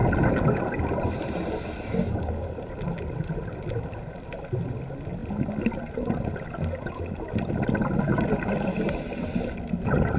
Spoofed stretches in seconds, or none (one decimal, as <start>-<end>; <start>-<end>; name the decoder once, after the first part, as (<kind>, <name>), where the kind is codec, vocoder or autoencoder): none